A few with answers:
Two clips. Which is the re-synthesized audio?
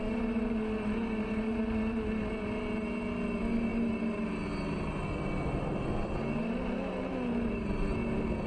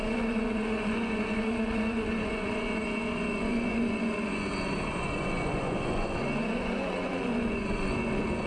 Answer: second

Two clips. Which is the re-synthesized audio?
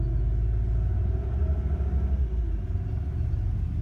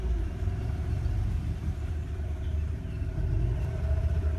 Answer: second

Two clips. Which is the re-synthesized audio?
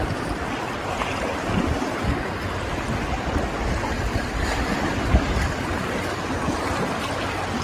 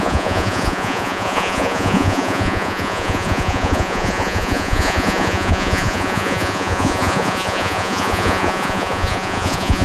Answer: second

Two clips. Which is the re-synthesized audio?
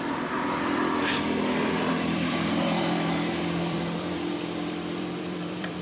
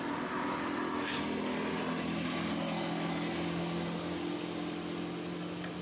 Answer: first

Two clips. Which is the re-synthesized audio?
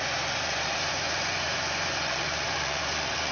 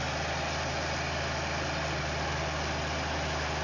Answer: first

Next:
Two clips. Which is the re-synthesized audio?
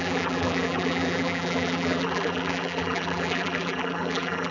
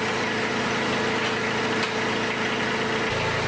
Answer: first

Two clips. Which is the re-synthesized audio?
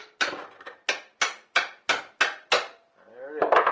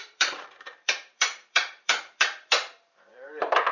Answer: second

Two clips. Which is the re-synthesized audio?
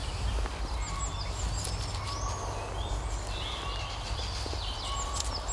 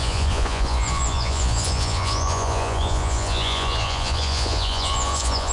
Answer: second